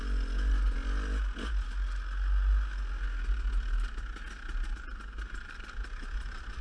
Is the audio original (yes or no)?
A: yes